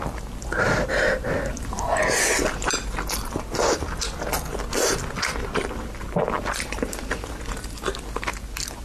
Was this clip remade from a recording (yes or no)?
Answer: no